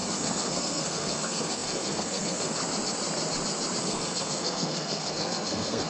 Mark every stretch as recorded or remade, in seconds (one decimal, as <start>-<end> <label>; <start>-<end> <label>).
0.0-2.6 remade; 2.6-3.8 recorded; 3.8-5.9 remade